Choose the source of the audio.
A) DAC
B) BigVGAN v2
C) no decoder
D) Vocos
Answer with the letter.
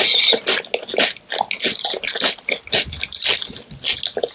C